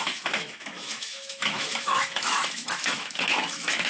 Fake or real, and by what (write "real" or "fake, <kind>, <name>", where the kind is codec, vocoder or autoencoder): fake, autoencoder, DAC-VAE